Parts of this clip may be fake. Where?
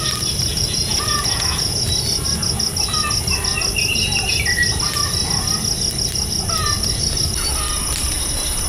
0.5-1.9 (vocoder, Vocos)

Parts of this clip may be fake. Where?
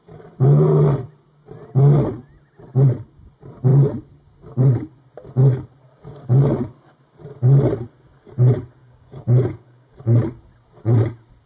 8.8-9.9 (codec, DAC)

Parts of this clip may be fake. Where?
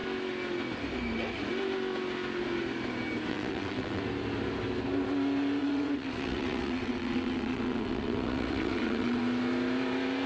3.3-4.0 (vocoder, WaveNeXt); 5.6-9.2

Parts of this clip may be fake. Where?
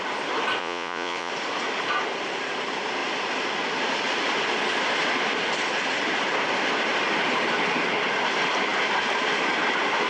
0.6-1.3 (vocoder, Vocos)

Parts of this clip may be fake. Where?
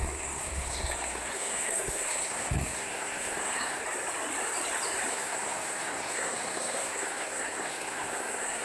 0.0-3.8 (codec, SNAC); 5.1-8.6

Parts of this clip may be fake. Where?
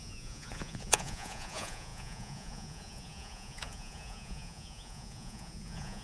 0.0-6.0 (vocoder, Vocos)